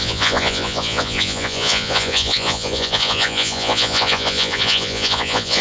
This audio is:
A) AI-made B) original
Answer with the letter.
A